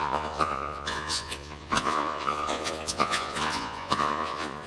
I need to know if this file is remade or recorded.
remade